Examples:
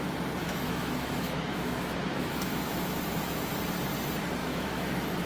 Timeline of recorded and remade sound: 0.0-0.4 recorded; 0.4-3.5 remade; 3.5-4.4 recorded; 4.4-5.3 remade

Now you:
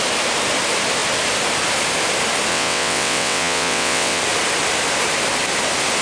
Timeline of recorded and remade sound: 0.0-2.5 recorded; 2.5-4.2 remade; 4.2-6.0 recorded

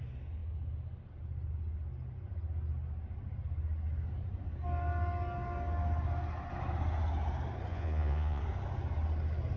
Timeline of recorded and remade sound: 0.0-7.7 recorded; 7.7-8.4 remade; 8.4-9.6 recorded

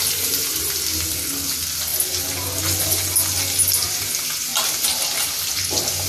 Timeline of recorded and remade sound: 0.0-6.1 recorded

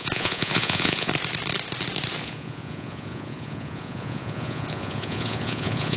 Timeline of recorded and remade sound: 0.0-1.1 remade; 1.1-2.2 recorded; 2.2-6.0 remade

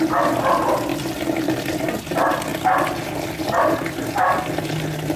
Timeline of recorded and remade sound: 0.0-0.9 recorded; 0.9-1.5 remade; 1.5-5.2 recorded